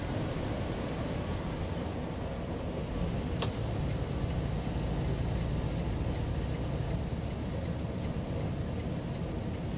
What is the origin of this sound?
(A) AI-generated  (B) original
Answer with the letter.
B